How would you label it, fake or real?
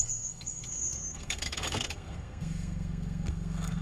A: fake